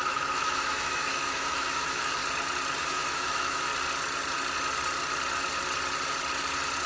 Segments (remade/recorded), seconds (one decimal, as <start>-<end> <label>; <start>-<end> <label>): 0.0-2.2 remade; 2.2-2.8 recorded; 2.8-3.7 remade; 3.7-6.9 recorded

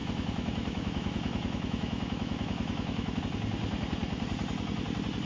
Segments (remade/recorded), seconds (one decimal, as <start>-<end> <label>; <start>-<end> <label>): 0.0-3.2 remade; 3.2-5.3 recorded

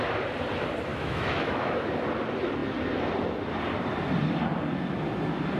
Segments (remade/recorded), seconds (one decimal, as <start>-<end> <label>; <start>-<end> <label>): 0.0-0.9 recorded; 0.9-1.9 remade; 1.9-5.6 recorded

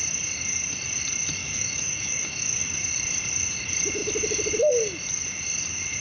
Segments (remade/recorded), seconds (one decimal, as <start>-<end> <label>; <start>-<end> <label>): 0.0-1.4 recorded; 1.4-2.6 remade; 2.6-6.0 recorded

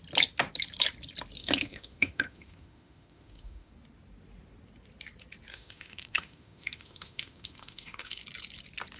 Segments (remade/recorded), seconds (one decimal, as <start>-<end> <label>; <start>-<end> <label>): 0.0-1.4 recorded; 1.4-3.7 remade; 3.7-5.5 recorded; 5.5-8.2 remade; 8.2-9.0 recorded